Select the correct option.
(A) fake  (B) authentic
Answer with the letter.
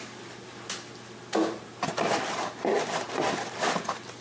B